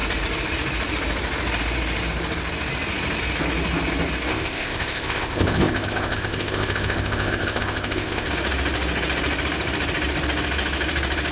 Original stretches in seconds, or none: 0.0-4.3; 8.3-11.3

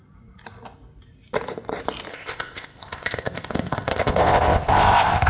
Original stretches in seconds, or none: 0.0-2.1

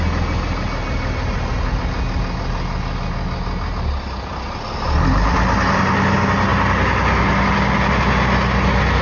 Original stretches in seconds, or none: 0.0-9.0

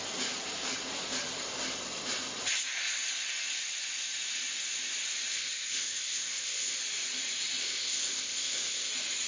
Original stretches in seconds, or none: 0.0-5.3; 6.8-7.6; 8.9-9.3

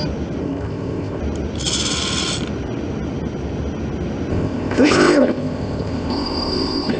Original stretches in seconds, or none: 0.0-0.4; 1.2-4.3